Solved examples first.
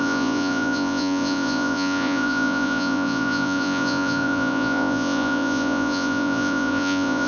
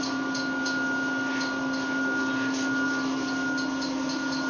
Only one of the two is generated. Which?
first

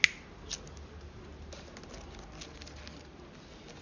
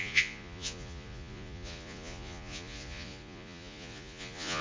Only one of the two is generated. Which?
second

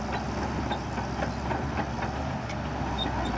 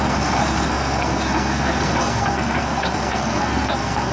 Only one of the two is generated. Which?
second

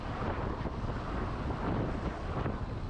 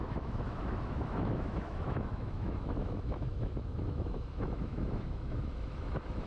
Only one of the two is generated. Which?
second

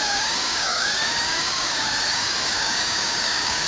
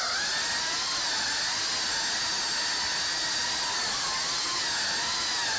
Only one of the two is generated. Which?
first